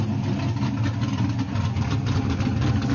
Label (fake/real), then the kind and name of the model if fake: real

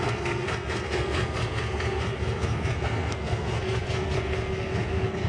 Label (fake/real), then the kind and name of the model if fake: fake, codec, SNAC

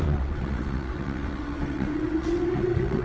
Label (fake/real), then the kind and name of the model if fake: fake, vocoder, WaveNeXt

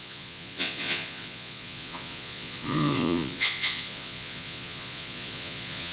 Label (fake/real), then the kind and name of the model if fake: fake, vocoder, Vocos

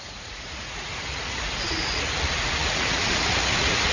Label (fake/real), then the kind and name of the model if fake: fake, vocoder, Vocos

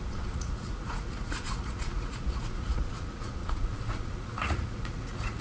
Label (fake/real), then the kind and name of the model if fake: fake, vocoder, Vocos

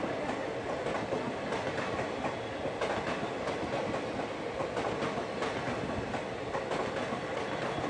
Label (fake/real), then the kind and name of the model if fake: real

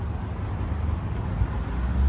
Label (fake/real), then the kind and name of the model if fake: real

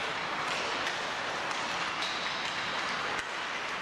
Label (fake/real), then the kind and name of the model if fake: real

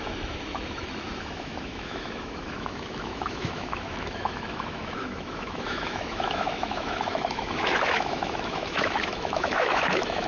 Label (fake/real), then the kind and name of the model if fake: fake, autoencoder, DAC-VAE